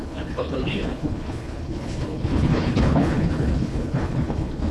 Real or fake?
fake